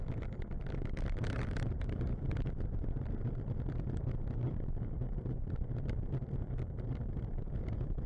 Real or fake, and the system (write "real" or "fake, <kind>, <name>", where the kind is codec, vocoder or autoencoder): fake, vocoder, BigVGAN v2